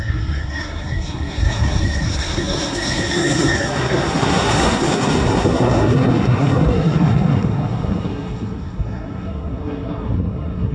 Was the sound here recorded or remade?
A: remade